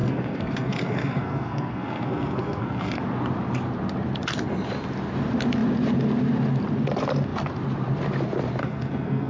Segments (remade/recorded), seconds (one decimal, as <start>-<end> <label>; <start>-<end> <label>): 0.0-3.0 remade; 3.0-8.6 recorded; 8.6-9.3 remade